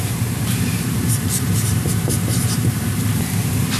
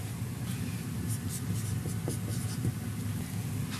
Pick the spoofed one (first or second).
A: first